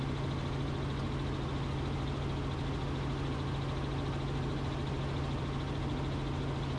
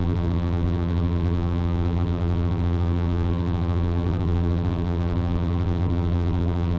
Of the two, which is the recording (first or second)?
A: first